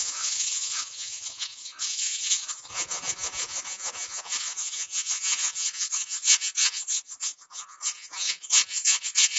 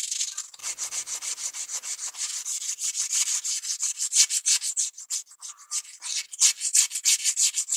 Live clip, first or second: second